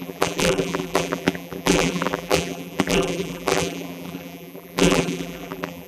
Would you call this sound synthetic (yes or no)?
yes